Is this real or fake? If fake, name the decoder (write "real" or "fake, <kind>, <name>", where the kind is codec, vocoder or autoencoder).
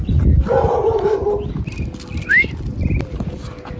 real